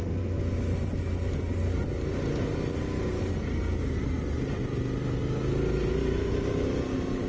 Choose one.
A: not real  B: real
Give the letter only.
B